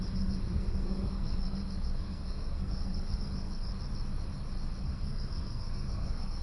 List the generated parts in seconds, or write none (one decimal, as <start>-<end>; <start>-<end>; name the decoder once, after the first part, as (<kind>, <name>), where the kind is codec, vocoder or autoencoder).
0.0-3.7 (codec, SNAC); 4.8-6.4